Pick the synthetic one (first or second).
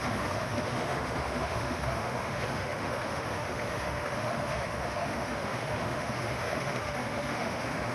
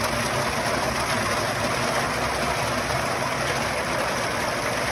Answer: first